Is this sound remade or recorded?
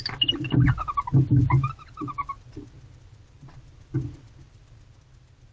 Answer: recorded